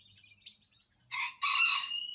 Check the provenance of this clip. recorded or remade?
recorded